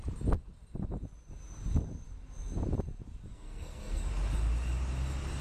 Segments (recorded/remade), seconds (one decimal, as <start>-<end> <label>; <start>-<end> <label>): 0.0-3.3 recorded; 3.3-4.0 remade; 4.0-5.4 recorded